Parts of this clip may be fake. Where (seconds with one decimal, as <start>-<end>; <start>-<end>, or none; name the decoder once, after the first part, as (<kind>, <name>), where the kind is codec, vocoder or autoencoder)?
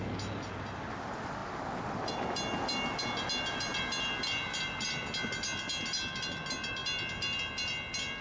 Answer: none